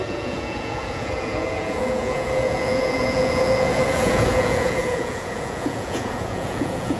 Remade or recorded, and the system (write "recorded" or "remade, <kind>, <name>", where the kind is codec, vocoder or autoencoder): remade, vocoder, Vocos